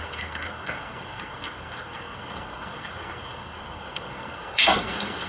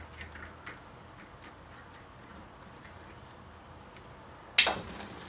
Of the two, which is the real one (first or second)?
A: second